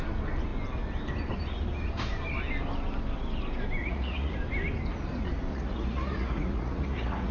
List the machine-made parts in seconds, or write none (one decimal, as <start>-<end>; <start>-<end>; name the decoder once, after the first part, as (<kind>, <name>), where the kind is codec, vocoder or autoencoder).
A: 3.8-4.4 (vocoder, Vocos); 5.5-7.3